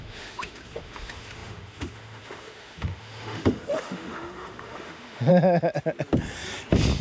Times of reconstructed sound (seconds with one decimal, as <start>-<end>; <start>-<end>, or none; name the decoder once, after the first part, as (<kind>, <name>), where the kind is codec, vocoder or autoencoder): 0.0-5.3 (autoencoder, DAC-VAE)